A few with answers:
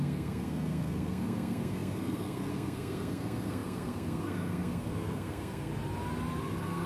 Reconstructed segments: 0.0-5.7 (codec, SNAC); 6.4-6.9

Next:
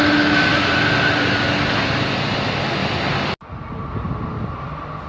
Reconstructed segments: none

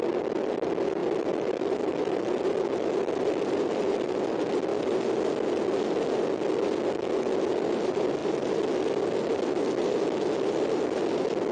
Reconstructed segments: 0.0-4.7 (vocoder, BigVGAN v2); 7.1-11.5

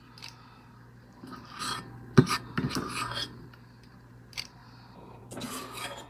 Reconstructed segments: none

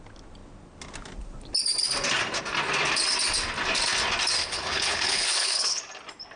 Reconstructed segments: 4.4-5.8 (codec, HILCodec)

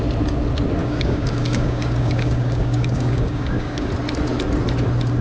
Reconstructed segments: 0.8-3.9 (codec, DAC)

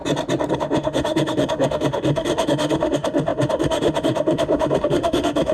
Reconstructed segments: 0.5-5.5 (autoencoder, DAC-VAE)

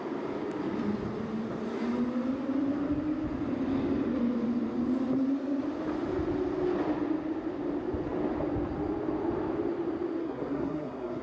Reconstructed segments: 10.2-11.2 (codec, SNAC)